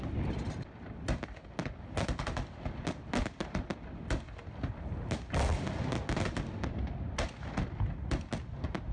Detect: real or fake real